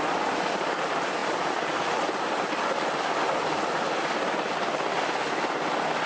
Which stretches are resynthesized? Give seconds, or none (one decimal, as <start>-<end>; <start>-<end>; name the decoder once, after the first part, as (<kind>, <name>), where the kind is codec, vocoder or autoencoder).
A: none